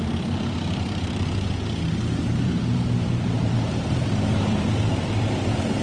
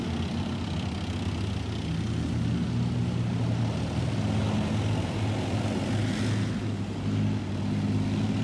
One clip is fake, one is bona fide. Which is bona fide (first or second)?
second